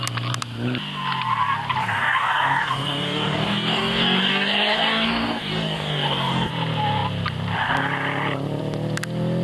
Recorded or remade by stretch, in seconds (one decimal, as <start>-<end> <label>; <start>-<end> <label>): 0.0-1.8 recorded; 1.8-6.5 remade; 6.5-9.4 recorded